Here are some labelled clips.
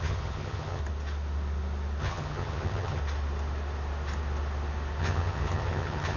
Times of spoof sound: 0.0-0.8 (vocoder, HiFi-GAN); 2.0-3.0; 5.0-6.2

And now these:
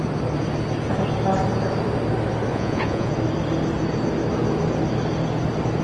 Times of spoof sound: 2.5-3.1 (vocoder, Vocos)

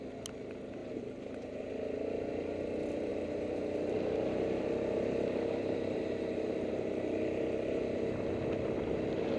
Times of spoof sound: 0.8-1.7 (vocoder, BigVGAN v2); 3.1-8.2